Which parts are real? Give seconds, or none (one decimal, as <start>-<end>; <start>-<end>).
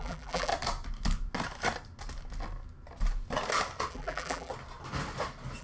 0.5-3.9; 4.5-5.6